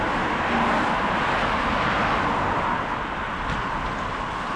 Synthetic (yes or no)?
no